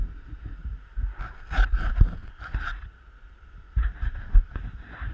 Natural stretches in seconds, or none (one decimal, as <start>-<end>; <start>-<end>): 0.6-2.8; 4.5-5.1